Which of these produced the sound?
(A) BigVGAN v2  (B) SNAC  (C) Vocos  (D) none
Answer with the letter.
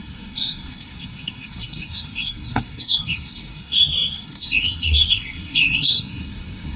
B